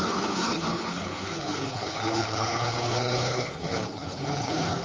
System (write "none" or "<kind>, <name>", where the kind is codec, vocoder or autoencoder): codec, HILCodec